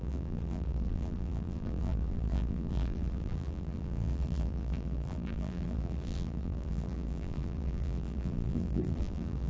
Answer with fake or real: fake